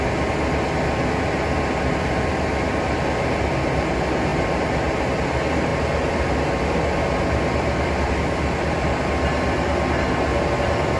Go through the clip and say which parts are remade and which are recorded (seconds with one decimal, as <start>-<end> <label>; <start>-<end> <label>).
0.0-11.0 recorded